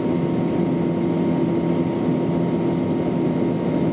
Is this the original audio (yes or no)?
yes